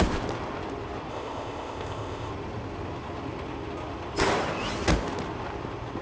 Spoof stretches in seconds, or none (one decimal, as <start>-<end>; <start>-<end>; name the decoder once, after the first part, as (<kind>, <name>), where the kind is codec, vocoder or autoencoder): 1.1-2.3 (codec, ZipCodec)